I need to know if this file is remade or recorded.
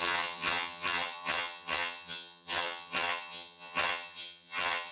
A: remade